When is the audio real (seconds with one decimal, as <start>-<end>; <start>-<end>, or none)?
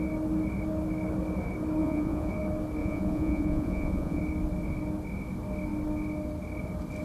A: 0.0-1.8; 2.3-2.8; 4.2-7.0